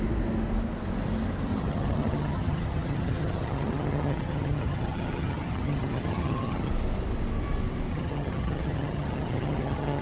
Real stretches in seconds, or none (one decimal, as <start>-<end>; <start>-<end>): 0.0-1.5; 6.7-7.9